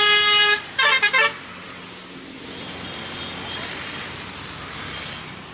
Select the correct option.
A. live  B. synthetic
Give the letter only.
A